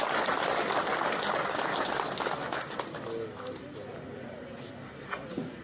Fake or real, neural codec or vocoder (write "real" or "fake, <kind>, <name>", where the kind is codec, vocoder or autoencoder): real